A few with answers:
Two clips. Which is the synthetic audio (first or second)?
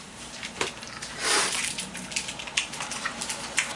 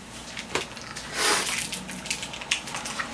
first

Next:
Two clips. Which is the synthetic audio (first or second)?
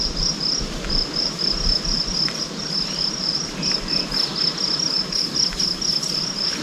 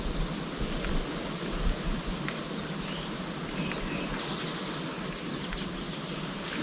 first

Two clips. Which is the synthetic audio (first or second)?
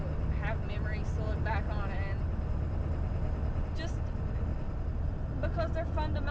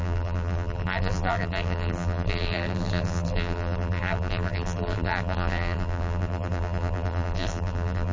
second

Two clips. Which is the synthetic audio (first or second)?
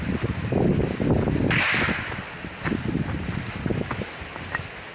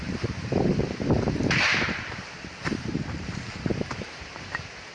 second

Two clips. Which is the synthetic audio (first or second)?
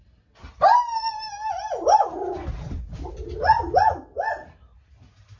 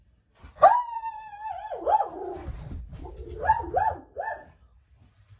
second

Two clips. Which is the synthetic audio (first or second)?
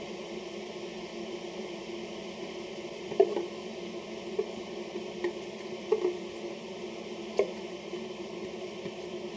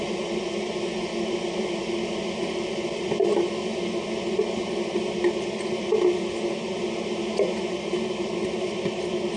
first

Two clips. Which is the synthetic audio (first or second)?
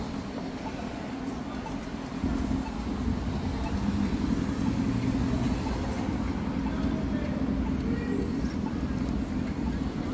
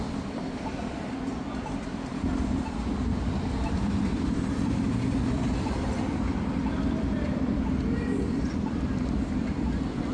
second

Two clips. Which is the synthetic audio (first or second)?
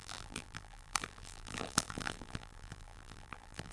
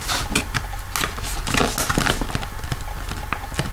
first